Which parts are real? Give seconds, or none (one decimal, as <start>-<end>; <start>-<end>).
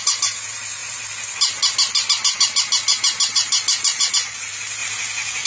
0.0-5.5